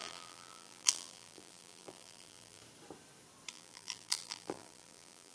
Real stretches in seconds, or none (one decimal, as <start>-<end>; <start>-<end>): 2.6-3.5